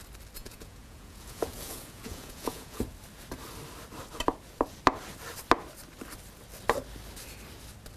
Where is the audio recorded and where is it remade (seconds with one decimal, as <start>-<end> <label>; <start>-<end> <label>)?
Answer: 0.0-0.4 recorded; 0.4-2.8 remade; 2.8-8.0 recorded